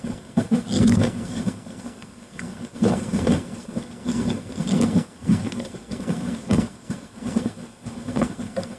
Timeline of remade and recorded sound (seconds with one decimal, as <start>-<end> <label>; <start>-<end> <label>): 0.0-8.8 remade